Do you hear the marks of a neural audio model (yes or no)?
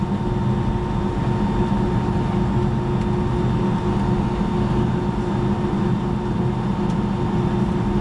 no